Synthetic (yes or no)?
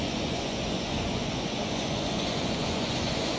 yes